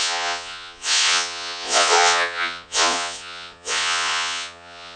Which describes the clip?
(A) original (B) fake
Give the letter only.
B